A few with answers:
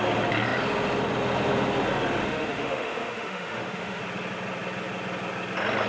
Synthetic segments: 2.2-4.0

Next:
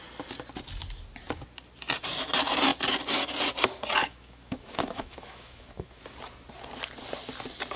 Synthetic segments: 4.0-6.0

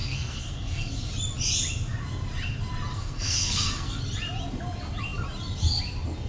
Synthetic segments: 0.0-0.9; 2.9-4.0

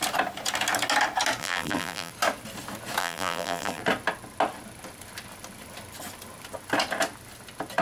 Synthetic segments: 1.4-2.1; 3.0-3.8

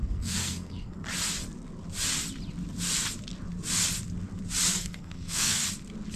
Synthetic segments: 0.0-1.0; 4.7-5.6

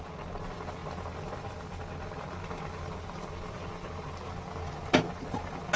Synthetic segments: none

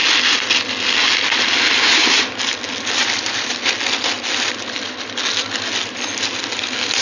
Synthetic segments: none